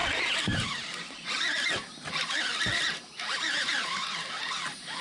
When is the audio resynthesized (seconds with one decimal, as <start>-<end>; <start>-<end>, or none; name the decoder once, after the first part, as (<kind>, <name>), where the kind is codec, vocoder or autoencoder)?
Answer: 0.0-2.7 (vocoder, BigVGAN v2)